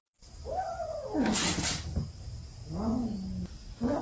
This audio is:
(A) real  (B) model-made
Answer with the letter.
A